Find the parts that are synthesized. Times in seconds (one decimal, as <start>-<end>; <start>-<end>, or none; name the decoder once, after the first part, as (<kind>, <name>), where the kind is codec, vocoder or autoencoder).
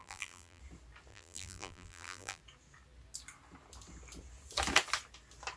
0.0-0.6 (vocoder, BigVGAN v2); 1.1-2.4